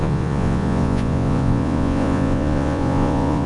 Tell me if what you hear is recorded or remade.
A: remade